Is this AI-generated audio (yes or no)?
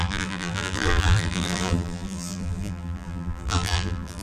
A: yes